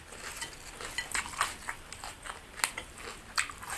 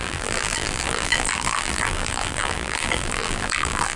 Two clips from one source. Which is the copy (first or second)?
second